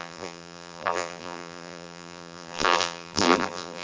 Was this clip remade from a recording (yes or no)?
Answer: yes